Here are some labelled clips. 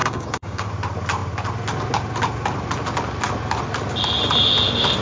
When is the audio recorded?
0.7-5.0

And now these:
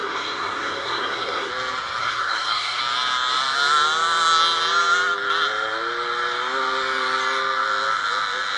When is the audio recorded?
1.5-2.0; 2.8-8.6

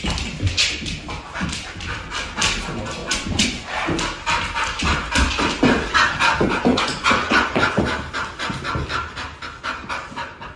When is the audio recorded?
0.0-3.0; 3.7-6.7; 7.8-10.6

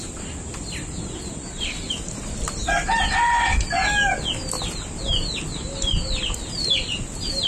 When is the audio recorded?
0.0-7.5